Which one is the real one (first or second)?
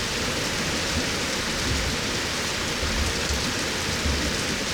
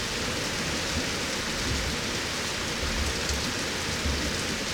second